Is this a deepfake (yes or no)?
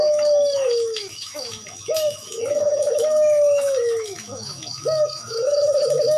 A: yes